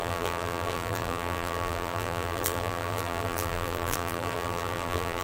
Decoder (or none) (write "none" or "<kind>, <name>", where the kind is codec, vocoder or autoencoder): vocoder, BigVGAN v2